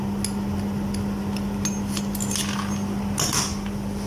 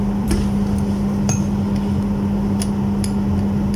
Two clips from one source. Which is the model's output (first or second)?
second